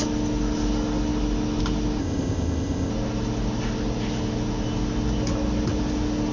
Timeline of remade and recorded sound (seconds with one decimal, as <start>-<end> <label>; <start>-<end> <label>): 0.0-2.0 recorded; 2.0-2.9 remade; 2.9-6.3 recorded